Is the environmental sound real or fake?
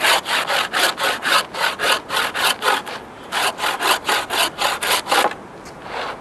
real